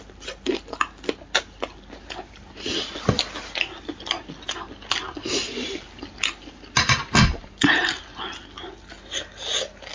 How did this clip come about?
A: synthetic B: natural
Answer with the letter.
B